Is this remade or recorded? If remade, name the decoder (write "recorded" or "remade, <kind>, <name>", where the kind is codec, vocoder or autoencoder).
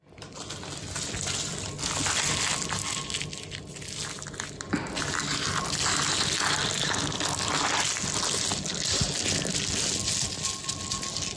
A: recorded